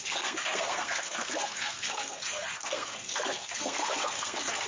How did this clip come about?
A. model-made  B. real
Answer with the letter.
A